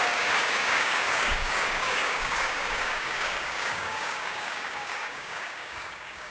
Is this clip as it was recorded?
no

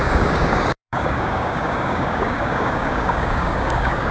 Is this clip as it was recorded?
no